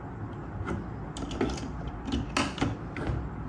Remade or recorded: recorded